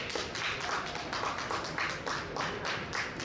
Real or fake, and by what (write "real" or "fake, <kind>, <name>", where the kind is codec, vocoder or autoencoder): real